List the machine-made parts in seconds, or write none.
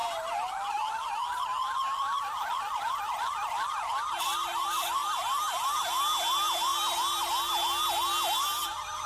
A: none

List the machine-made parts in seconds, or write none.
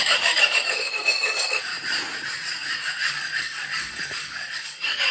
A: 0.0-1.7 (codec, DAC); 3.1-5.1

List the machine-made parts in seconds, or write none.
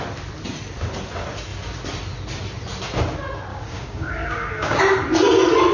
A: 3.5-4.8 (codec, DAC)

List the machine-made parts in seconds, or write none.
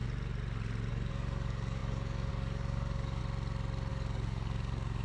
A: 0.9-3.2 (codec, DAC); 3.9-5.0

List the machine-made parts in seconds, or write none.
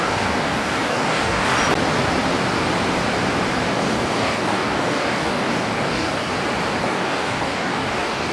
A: 0.0-1.5 (codec, DAC); 3.7-6.3; 6.8-8.3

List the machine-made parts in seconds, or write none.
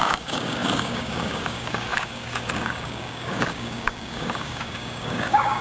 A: 0.0-5.6 (codec, DAC)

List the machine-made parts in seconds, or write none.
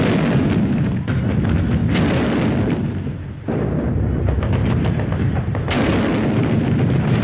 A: none